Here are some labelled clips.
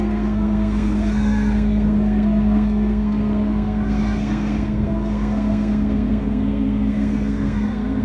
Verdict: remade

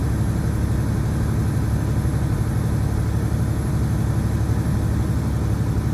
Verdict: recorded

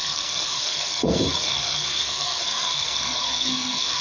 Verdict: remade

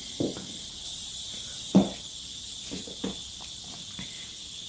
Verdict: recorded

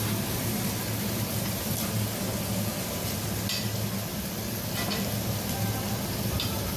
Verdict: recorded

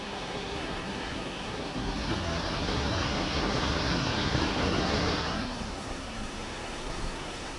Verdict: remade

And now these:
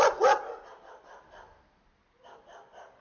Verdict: recorded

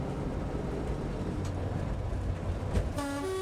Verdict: recorded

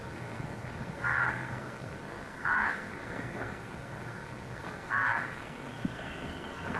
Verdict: remade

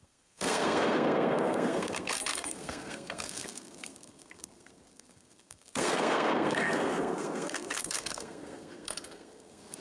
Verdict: remade